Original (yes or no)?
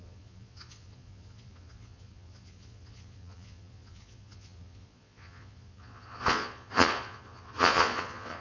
no